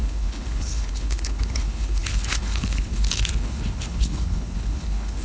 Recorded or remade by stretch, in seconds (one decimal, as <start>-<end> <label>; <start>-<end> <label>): 0.0-5.2 remade